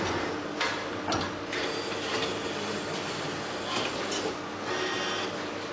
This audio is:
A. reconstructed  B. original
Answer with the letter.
B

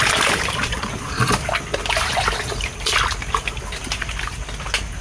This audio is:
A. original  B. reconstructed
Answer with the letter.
A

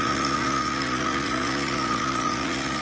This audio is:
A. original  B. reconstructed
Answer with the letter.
B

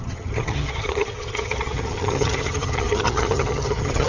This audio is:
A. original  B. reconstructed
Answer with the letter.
B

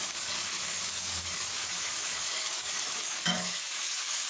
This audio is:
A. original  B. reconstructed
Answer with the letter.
B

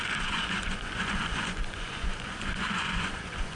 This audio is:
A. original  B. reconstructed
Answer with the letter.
B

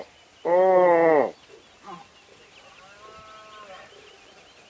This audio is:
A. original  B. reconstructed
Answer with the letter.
A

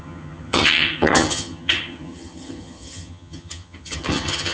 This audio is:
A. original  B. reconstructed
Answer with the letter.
B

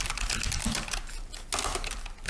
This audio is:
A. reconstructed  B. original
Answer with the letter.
B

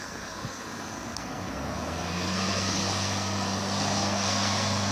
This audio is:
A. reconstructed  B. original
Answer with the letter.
A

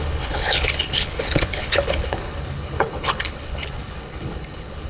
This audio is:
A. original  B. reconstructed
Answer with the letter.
B